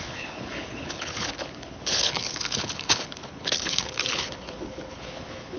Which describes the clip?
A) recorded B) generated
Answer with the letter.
B